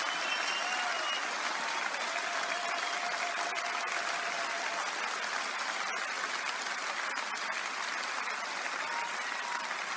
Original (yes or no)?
yes